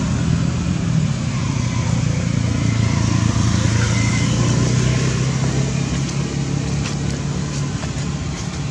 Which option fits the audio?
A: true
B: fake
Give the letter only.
A